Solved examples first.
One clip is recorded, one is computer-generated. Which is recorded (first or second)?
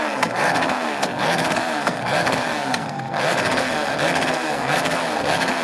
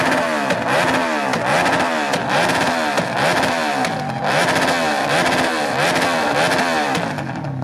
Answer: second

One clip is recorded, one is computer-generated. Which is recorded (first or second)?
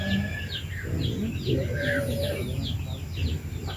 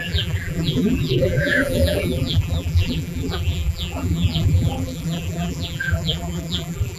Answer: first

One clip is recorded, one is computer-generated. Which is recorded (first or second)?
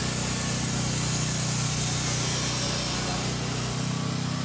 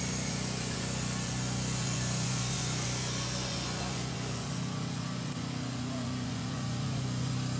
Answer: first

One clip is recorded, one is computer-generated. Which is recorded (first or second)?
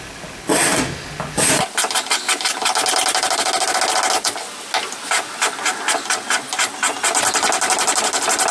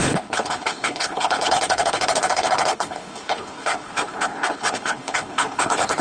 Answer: first